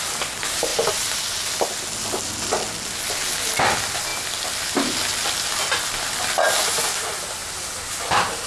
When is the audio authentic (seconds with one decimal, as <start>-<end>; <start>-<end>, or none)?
0.0-7.4